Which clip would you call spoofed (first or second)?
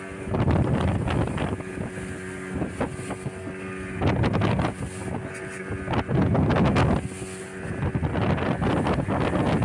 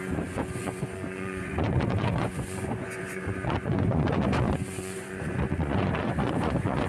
second